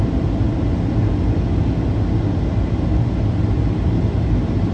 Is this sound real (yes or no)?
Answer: yes